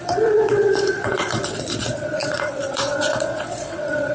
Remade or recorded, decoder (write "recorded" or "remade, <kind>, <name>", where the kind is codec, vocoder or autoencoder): remade, vocoder, Vocos